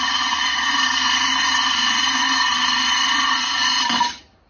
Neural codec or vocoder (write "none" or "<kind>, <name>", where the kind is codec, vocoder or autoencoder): none